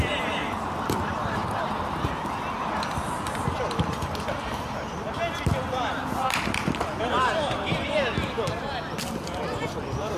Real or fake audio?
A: real